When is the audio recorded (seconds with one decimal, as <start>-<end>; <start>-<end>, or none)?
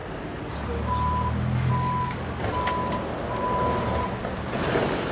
0.0-1.7; 2.8-5.1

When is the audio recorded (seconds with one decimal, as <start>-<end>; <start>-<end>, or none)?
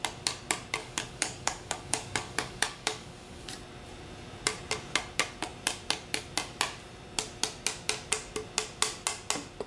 0.0-0.8; 3.5-9.7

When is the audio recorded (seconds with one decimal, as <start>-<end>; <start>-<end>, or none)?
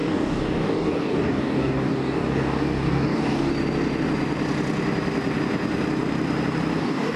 3.5-6.8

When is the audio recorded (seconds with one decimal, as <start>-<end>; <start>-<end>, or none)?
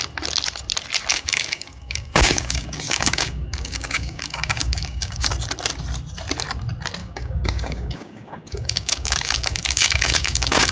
0.0-1.1; 5.3-7.0